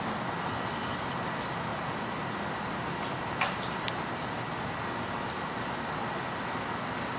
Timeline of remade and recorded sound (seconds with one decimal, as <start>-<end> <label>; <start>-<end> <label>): 0.0-1.7 recorded; 1.7-6.0 remade; 6.0-7.2 recorded